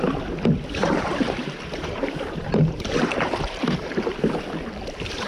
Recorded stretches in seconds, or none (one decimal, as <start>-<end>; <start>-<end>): 0.0-0.8; 4.0-5.3